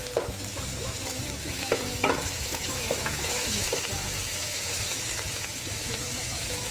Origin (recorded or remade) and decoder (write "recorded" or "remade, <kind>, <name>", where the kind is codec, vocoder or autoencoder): remade, autoencoder, DAC-VAE